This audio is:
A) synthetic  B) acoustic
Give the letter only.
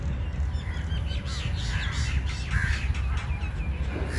B